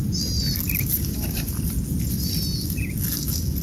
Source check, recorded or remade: recorded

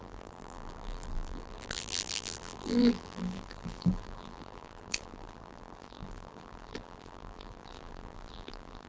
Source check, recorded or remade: remade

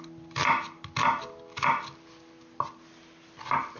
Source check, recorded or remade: recorded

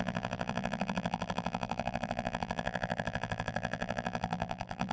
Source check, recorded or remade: remade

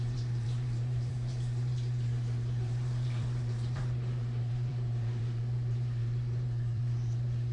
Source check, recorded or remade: remade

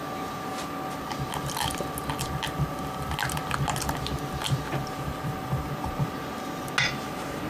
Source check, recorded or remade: recorded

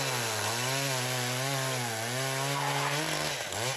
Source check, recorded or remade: recorded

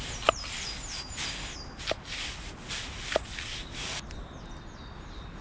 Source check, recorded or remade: recorded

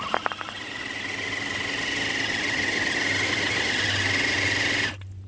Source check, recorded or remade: recorded